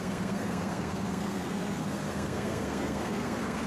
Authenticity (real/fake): fake